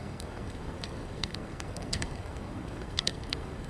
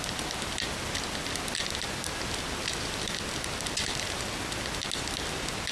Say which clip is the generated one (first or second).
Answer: first